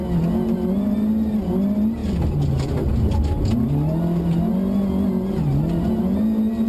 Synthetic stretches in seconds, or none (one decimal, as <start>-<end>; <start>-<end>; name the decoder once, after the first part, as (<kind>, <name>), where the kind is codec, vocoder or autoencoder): none